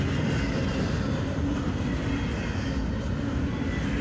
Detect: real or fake real